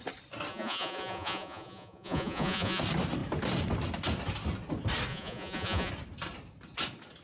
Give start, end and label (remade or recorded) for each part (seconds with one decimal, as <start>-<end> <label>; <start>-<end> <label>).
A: 0.0-0.5 recorded; 0.5-2.8 remade; 2.8-5.1 recorded; 5.1-5.9 remade; 5.9-7.2 recorded